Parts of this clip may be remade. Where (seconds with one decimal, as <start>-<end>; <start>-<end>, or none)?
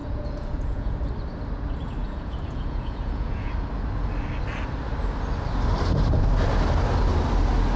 0.0-1.0; 2.0-3.5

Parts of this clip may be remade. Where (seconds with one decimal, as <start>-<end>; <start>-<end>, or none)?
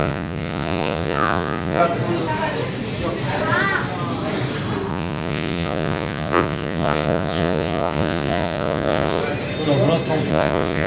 0.0-1.8; 4.9-9.2; 10.3-10.9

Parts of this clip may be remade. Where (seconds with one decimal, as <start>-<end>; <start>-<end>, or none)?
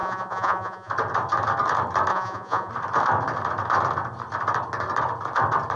0.0-0.9; 2.1-2.7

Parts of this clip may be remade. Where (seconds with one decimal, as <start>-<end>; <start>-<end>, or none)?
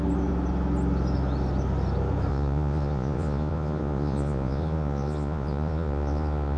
2.3-6.6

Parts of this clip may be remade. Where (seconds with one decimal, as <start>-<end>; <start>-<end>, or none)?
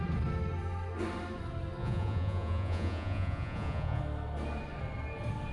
1.8-4.0